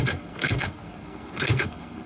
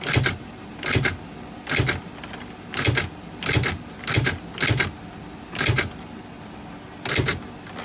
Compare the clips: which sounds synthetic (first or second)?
first